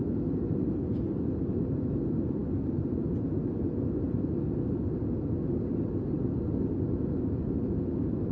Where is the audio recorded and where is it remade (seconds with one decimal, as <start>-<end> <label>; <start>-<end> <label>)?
0.0-8.3 recorded